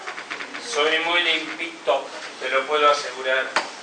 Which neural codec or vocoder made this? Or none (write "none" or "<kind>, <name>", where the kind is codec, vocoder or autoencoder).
none